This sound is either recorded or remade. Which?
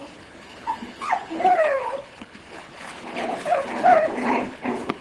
remade